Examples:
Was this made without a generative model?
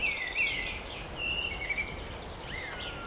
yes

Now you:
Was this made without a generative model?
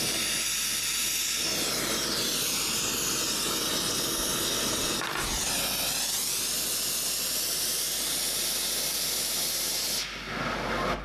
yes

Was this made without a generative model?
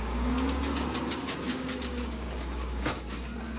no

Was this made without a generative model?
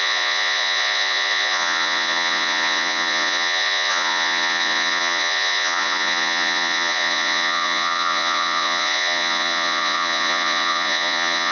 no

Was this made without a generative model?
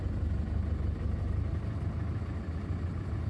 yes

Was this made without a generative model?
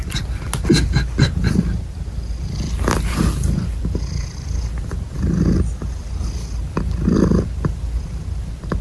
yes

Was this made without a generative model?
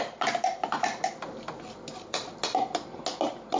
yes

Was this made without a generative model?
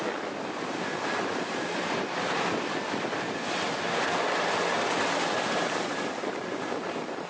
yes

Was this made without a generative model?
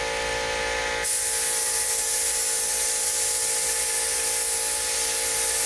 yes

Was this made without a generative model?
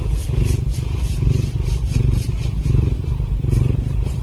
no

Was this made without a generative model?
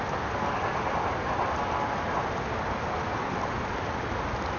yes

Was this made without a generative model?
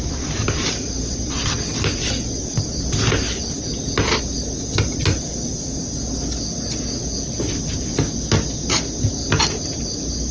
yes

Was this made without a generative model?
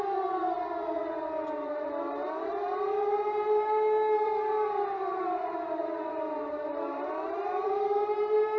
no